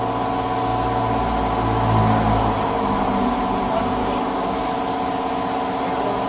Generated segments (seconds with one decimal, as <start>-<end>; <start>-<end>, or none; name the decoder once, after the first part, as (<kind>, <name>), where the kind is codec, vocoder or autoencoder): 4.0-4.7 (codec, DAC)